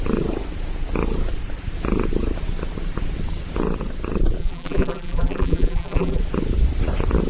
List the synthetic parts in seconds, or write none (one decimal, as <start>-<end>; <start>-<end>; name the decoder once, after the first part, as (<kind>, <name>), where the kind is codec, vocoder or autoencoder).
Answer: 4.4-6.2 (vocoder, BigVGAN v2)